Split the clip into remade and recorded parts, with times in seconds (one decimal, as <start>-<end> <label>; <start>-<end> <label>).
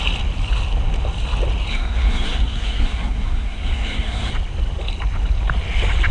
0.0-1.7 recorded; 1.7-4.3 remade; 4.3-6.1 recorded